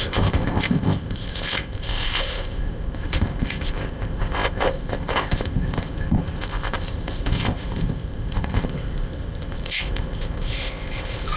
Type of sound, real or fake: fake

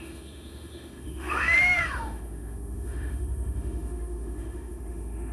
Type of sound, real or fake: fake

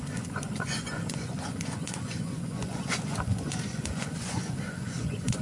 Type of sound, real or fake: fake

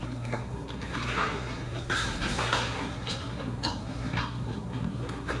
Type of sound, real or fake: fake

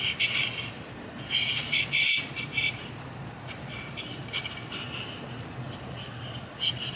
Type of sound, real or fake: real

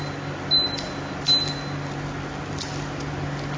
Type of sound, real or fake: real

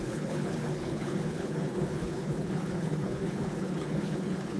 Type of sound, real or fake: fake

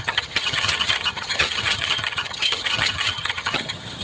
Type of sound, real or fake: fake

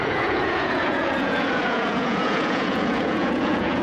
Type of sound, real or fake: fake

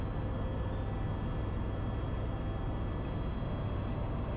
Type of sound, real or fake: real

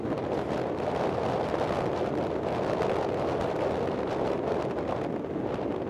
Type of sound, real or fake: real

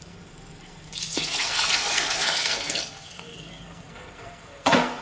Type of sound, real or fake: fake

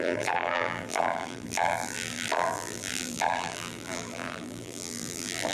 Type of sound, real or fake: fake